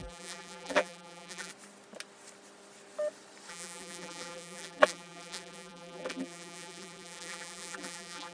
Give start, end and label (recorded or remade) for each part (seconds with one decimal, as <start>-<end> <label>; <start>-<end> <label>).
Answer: 0.0-1.5 remade; 1.5-3.5 recorded; 3.5-8.3 remade